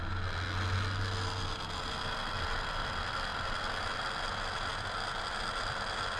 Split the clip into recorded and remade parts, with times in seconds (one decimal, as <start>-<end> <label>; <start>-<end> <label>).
0.0-6.2 recorded

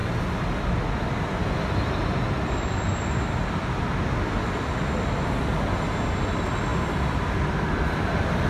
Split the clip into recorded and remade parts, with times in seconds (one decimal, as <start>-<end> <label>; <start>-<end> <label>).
0.0-8.5 recorded

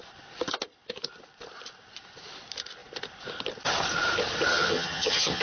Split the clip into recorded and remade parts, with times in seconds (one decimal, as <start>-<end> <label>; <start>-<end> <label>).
0.0-4.5 recorded; 4.5-5.4 remade

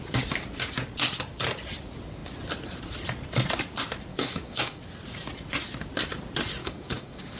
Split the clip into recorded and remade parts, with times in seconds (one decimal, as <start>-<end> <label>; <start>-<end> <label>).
0.0-4.1 recorded; 4.1-4.8 remade; 4.8-6.6 recorded; 6.6-7.4 remade